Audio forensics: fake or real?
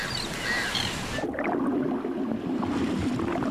real